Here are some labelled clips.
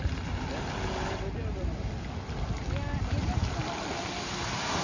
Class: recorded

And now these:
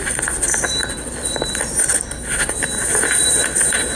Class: remade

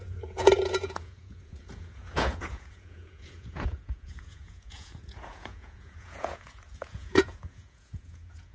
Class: remade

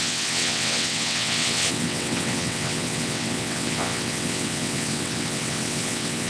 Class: remade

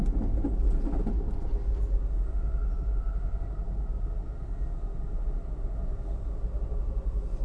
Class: recorded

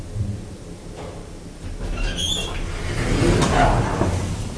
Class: recorded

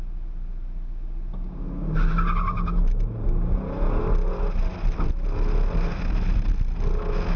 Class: recorded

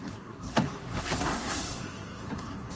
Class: remade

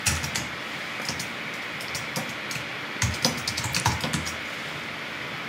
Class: recorded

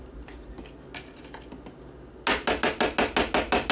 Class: recorded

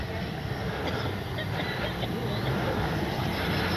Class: remade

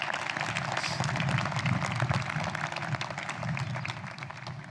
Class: recorded